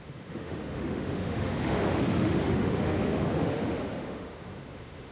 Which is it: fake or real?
fake